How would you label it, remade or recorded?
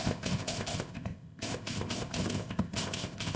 remade